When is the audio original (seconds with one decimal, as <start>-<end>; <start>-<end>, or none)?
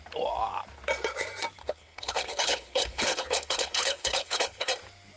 0.0-1.6; 4.7-5.2